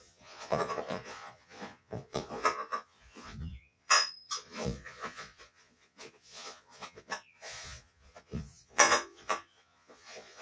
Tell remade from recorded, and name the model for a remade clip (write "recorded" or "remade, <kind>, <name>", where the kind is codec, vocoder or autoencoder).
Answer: remade, vocoder, Vocos